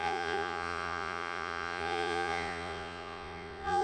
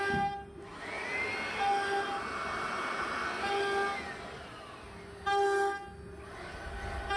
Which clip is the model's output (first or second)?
first